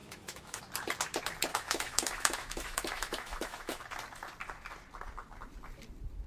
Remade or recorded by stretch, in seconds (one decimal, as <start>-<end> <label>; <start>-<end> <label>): 0.0-0.6 remade; 0.6-1.5 recorded; 1.5-3.8 remade; 3.8-6.3 recorded